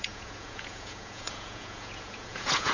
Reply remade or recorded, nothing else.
remade